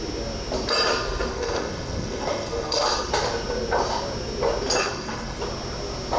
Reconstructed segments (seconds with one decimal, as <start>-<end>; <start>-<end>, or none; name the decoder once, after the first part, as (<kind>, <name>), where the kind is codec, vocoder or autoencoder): 0.9-3.1 (codec, SNAC); 4.8-5.4